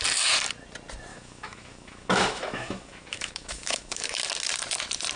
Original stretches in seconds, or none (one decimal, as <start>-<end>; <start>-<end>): 0.0-1.1; 4.2-5.2